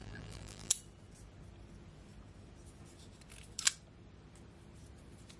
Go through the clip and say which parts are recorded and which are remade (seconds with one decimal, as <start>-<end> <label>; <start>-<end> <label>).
0.0-0.7 remade; 0.7-5.4 recorded